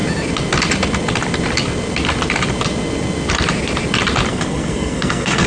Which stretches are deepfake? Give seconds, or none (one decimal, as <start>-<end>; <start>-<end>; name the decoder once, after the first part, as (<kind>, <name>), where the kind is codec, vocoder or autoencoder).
4.3-5.5 (codec, SNAC)